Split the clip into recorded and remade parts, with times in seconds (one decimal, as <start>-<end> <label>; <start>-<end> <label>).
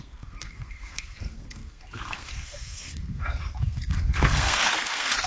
0.0-5.3 remade